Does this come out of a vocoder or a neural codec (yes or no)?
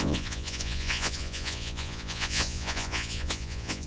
yes